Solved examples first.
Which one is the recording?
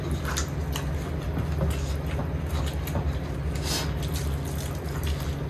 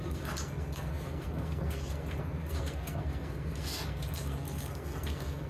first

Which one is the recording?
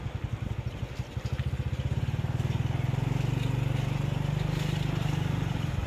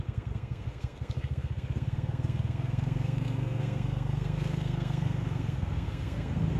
first